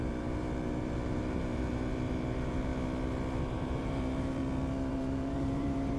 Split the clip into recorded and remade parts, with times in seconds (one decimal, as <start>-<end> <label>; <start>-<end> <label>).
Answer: 0.0-2.7 remade; 2.7-3.4 recorded; 3.4-4.4 remade; 4.4-4.9 recorded; 4.9-6.0 remade